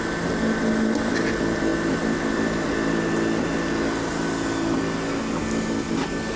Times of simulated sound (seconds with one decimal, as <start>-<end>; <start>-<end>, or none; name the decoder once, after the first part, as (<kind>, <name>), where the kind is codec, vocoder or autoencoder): none